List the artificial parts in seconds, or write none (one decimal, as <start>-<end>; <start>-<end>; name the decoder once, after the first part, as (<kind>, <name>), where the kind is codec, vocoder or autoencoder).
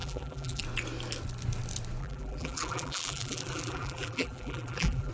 0.0-0.6 (vocoder, BigVGAN v2); 2.0-5.1